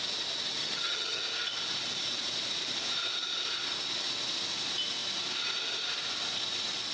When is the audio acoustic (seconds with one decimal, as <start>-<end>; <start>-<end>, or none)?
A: 0.0-0.6; 1.2-6.9